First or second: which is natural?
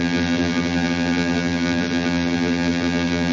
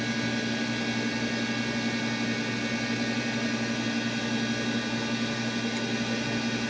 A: second